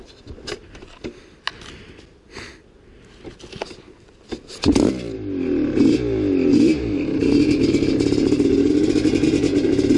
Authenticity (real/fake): real